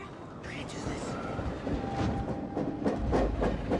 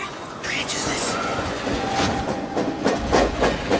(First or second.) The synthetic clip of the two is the second